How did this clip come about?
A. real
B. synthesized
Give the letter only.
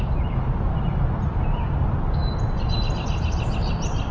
A